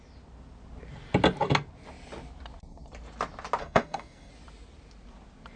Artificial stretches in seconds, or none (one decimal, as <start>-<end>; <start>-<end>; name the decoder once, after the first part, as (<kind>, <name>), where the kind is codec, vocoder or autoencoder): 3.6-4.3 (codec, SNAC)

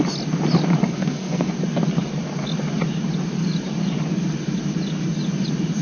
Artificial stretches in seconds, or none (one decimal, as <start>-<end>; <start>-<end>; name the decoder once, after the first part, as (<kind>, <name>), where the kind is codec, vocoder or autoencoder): 0.8-1.5 (codec, SNAC)

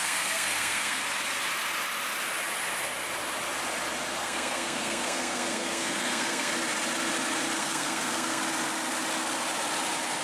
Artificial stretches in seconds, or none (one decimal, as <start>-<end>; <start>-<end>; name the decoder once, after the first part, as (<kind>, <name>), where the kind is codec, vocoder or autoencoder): 0.0-1.0 (codec, SNAC); 4.2-6.5; 7.6-8.4